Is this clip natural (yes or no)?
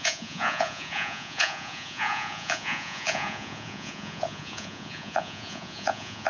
no